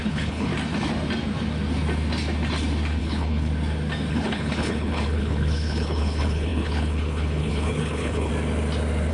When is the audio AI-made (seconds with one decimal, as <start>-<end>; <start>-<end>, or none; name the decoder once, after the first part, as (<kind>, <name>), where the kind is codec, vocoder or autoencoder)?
0.0-0.5 (codec, HILCodec); 3.0-3.5; 4.1-8.3